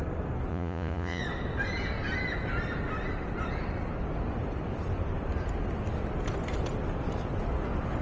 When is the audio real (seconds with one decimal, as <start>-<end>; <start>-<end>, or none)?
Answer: 0.0-0.5; 1.2-8.0